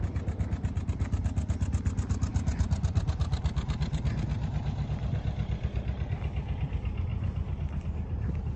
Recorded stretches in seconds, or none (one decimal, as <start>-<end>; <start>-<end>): 0.0-8.6

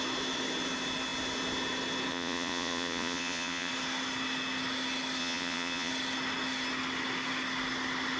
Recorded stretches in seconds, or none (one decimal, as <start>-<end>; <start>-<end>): 0.0-2.1; 3.7-5.2; 5.9-8.2

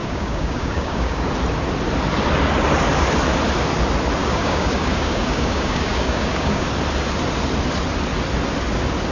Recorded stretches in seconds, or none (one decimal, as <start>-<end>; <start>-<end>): 1.3-4.2; 6.7-9.1

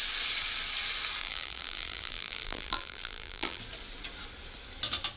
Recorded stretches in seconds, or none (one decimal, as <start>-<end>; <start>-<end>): 0.0-1.2; 3.6-5.2

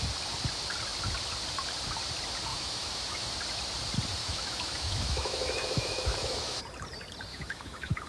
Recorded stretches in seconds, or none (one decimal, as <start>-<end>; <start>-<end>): 0.0-2.5; 3.3-4.2; 6.6-7.3